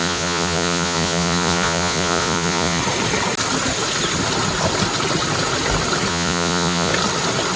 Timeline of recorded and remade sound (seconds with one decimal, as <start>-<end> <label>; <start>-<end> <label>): 0.0-2.8 remade; 2.8-6.1 recorded; 6.1-6.9 remade; 6.9-7.6 recorded